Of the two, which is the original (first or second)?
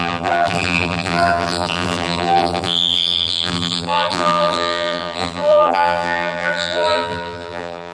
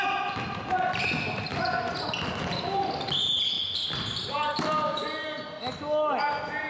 second